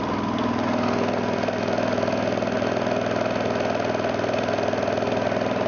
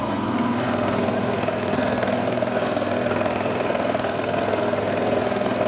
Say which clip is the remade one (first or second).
second